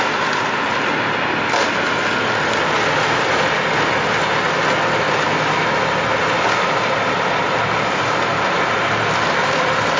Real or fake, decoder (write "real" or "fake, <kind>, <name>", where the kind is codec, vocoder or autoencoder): real